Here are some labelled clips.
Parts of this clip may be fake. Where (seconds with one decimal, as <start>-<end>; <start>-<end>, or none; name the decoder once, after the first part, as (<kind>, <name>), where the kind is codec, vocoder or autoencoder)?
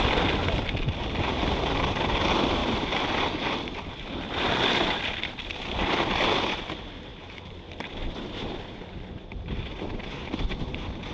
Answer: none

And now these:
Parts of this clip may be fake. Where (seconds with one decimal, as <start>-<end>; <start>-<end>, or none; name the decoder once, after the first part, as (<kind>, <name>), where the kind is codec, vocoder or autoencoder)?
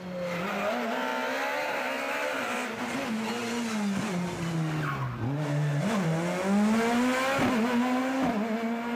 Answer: none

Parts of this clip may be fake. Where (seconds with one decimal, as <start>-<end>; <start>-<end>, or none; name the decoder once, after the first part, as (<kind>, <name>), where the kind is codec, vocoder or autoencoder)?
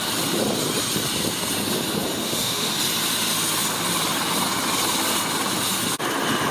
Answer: 2.2-2.7 (autoencoder, DAC-VAE)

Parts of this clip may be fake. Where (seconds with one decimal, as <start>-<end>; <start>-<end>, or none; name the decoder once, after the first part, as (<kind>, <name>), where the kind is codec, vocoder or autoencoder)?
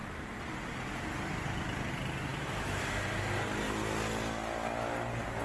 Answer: 2.3-2.8 (autoencoder, DAC-VAE)